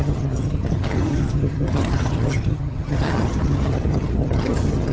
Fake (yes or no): yes